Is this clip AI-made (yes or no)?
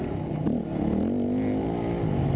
no